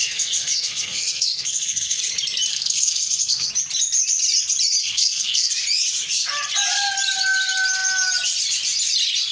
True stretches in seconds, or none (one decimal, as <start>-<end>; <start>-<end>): 2.0-2.5; 3.5-4.8; 5.5-9.3